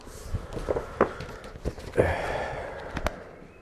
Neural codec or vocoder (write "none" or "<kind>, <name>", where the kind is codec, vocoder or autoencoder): none